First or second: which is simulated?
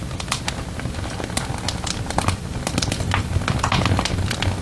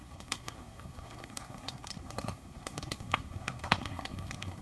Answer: second